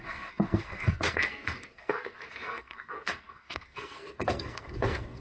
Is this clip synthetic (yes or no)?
yes